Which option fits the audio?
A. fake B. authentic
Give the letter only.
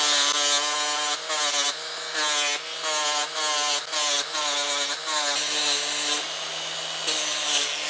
B